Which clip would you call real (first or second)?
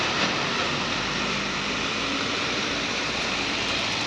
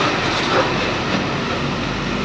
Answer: second